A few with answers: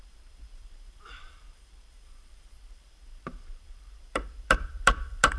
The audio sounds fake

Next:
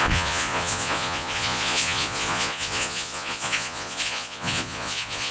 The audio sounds fake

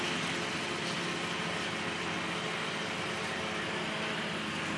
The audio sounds real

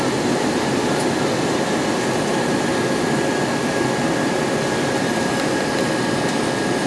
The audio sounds real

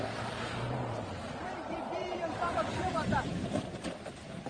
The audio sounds fake